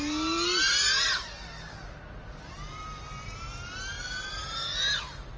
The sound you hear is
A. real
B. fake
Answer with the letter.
A